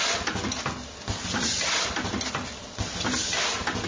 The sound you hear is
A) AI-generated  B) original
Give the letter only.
B